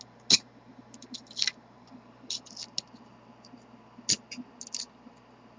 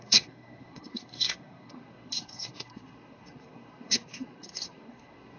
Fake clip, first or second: second